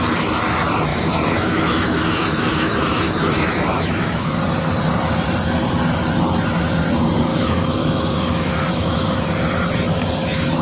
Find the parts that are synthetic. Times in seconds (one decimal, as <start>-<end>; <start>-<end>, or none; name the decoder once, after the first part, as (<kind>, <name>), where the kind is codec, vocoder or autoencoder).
0.9-4.4 (autoencoder, DAC-VAE); 7.3-9.3